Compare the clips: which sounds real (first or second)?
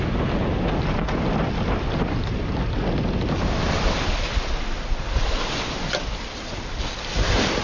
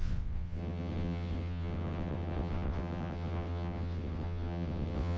first